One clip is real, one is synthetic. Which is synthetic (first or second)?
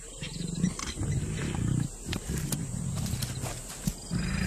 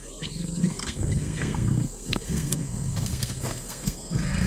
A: second